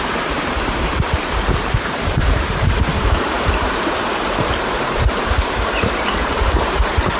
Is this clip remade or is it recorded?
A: remade